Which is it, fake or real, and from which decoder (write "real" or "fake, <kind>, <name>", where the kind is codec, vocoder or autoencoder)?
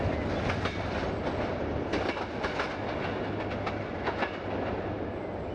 real